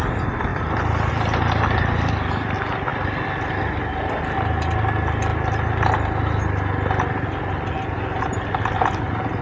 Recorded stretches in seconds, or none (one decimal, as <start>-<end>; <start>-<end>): 0.0-9.4